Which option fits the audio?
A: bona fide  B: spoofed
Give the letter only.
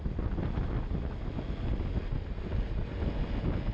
A